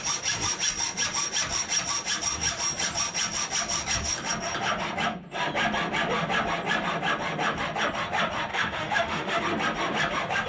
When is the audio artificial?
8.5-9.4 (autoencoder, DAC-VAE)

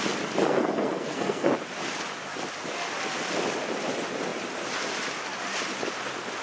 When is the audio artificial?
0.4-1.5 (codec, SNAC)

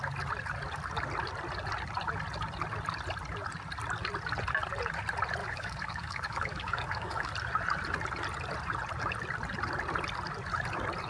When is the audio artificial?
5.4-7.3 (codec, DAC)

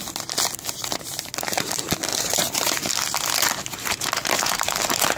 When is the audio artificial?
2.1-2.9 (vocoder, BigVGAN v2); 4.2-5.2